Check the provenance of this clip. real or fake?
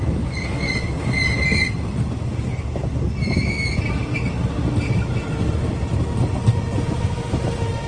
real